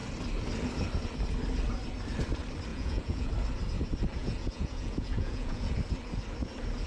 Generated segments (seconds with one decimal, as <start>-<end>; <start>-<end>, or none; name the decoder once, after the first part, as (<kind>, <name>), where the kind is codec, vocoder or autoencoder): 2.7-3.3 (vocoder, Vocos); 4.2-5.7